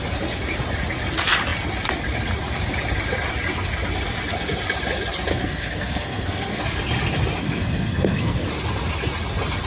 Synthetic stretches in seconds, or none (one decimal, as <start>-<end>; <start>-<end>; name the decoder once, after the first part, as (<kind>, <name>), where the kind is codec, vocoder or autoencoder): 5.3-6.6 (codec, SNAC); 7.4-8.5